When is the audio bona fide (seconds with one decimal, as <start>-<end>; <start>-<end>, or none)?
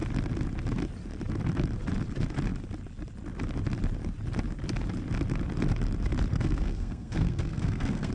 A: 0.0-6.3